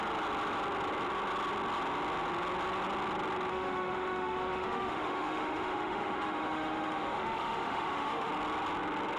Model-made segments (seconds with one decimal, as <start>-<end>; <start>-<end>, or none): 3.5-8.3